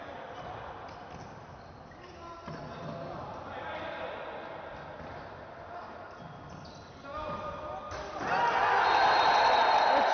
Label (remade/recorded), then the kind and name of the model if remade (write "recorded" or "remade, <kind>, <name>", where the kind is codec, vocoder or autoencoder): recorded